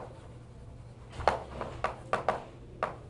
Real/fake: real